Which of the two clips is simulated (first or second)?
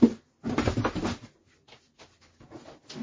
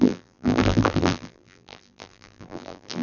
second